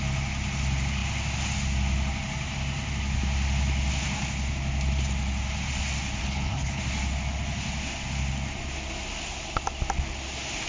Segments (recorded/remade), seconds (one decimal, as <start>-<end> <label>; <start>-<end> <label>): 0.0-6.2 recorded; 6.2-6.8 remade; 6.8-10.7 recorded